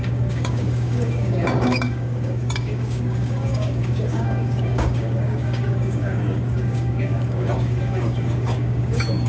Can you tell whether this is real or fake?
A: fake